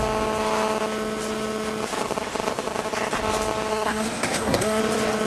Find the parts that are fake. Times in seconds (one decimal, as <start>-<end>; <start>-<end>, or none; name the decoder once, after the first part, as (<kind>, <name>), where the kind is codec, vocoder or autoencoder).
3.7-4.8 (codec, SNAC)